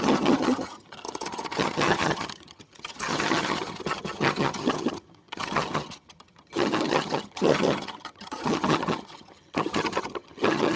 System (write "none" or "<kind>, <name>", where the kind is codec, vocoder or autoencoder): vocoder, HiFi-GAN